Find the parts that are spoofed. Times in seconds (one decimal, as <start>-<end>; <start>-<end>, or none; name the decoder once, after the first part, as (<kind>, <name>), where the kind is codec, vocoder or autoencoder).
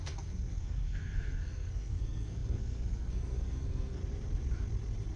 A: 0.0-4.0 (codec, SNAC)